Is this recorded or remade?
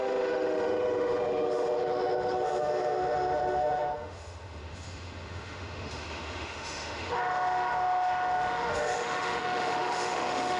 remade